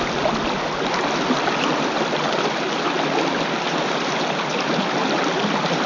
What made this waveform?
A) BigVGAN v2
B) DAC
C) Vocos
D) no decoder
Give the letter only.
D